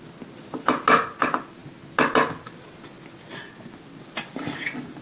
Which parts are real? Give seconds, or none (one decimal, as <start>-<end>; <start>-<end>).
0.0-5.0